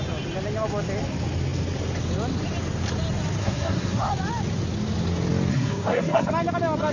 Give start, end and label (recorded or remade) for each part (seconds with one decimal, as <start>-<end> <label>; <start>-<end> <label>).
0.0-3.4 recorded; 3.4-4.1 remade; 4.1-5.5 recorded; 5.5-6.3 remade; 6.3-6.9 recorded